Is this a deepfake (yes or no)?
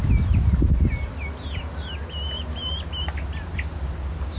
no